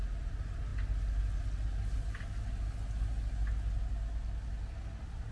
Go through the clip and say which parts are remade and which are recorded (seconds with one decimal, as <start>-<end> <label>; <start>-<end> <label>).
0.0-5.3 recorded